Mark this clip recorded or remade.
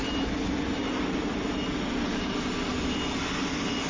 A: recorded